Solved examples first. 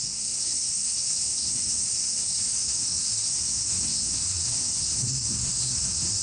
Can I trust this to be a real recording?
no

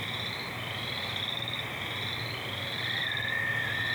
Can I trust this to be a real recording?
yes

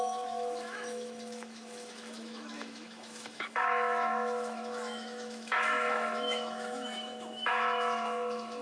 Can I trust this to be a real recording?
no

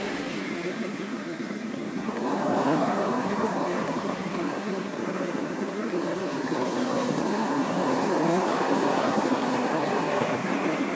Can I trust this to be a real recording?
no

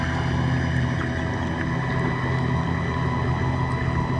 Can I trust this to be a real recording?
yes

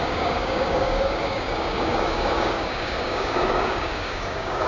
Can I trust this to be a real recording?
no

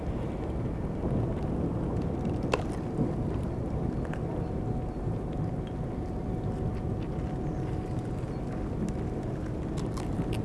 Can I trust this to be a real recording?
yes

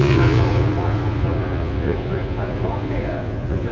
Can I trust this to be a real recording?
no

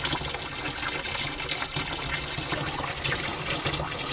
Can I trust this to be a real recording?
yes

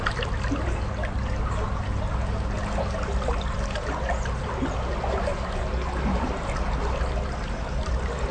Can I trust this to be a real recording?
yes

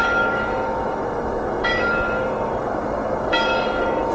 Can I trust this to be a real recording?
no